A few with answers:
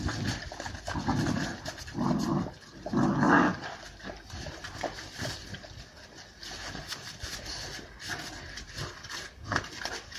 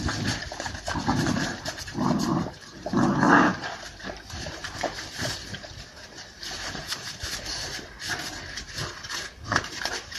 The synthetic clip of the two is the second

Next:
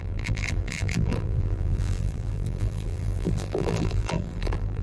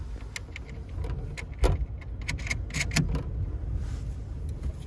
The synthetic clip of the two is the first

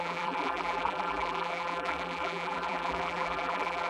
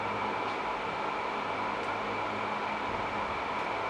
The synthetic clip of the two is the first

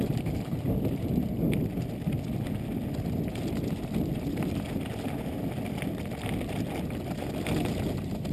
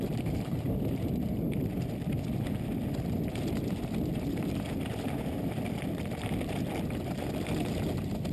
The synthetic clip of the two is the second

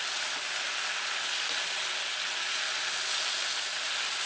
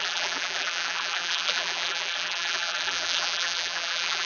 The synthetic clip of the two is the second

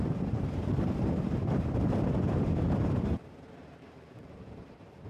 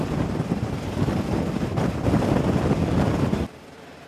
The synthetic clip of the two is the first